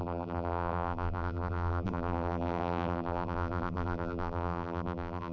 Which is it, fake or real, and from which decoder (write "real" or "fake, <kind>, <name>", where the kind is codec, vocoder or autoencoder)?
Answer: fake, vocoder, BigVGAN v2